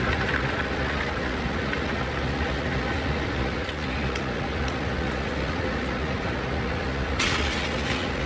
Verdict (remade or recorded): remade